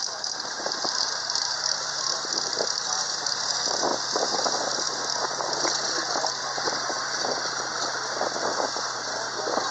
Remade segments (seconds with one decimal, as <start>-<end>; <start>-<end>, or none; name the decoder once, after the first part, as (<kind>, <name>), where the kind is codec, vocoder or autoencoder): none